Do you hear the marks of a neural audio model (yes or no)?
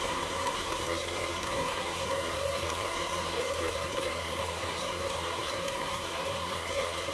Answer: yes